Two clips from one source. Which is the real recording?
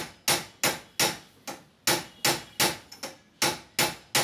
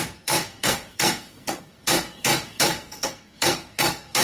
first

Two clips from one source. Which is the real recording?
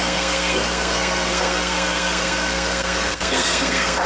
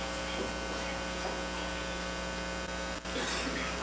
second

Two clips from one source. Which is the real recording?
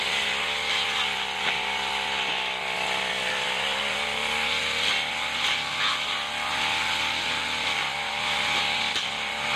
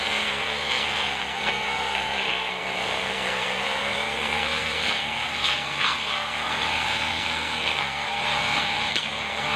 first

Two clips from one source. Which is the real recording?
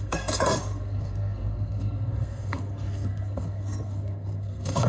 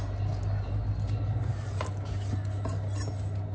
second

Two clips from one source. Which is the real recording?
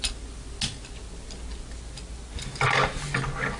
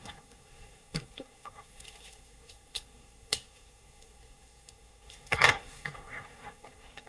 first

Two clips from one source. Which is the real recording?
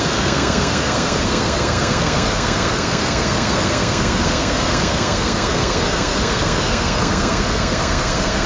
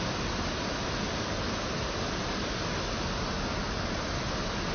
second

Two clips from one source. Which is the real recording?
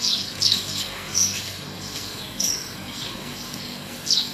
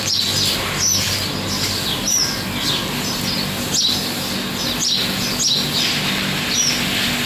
second